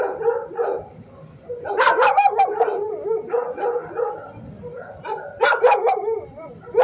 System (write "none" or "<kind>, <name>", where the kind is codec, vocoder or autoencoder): none